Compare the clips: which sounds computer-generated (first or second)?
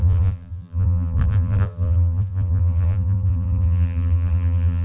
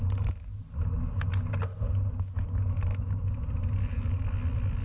first